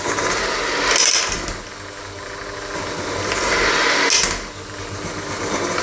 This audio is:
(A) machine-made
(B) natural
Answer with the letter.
B